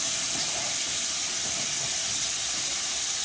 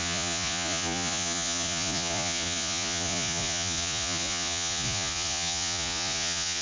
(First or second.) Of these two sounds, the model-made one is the second